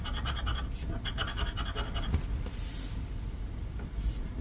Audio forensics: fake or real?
real